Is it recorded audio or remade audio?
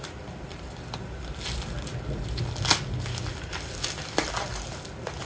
recorded